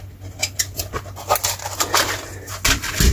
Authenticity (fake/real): real